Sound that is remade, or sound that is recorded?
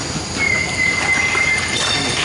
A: recorded